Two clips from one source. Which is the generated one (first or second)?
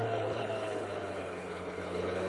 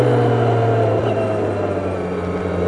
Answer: first